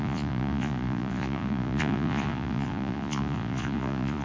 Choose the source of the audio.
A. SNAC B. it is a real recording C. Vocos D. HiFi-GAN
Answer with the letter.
C